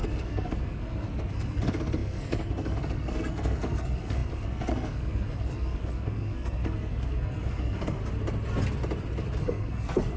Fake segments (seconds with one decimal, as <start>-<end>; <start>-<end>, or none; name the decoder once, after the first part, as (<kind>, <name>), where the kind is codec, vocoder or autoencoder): 0.0-8.0 (codec, SNAC); 9.4-10.2

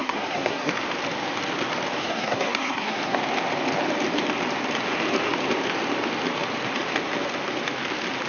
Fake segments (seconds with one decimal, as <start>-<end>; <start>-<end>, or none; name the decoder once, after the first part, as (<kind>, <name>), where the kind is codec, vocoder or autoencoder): 0.0-0.7 (codec, SNAC); 2.0-3.2

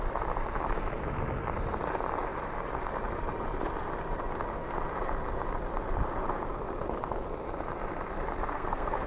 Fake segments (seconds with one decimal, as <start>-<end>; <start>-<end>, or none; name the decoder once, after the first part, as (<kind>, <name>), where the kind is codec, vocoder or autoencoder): 8.5-9.1 (codec, SNAC)

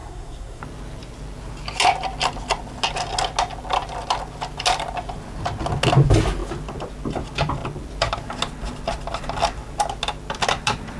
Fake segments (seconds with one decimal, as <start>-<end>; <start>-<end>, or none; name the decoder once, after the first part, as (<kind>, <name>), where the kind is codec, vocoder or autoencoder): 0.0-0.6 (codec, SNAC)

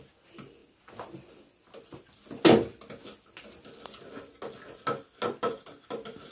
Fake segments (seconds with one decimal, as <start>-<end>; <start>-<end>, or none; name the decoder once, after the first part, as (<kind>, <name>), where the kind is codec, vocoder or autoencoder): none

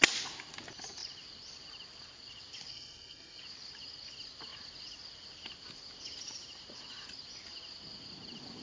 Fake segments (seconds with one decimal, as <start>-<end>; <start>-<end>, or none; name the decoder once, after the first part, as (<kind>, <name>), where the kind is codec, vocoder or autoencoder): 2.7-3.4 (codec, SNAC)